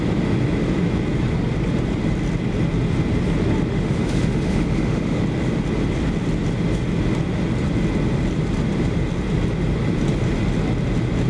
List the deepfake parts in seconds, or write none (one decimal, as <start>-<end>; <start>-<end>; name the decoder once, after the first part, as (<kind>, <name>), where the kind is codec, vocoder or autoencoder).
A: 3.7-5.2 (autoencoder, DAC-VAE)